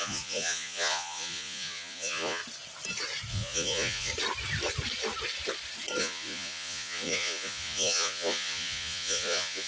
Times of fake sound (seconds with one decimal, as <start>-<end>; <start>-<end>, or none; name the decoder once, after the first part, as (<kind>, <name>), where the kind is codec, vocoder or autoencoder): 0.0-2.4 (vocoder, Vocos); 3.3-4.1; 6.0-9.7

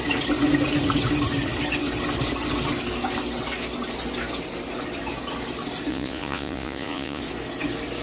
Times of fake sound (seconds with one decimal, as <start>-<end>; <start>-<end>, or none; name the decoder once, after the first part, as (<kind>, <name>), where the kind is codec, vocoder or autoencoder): 5.9-7.2 (vocoder, Vocos)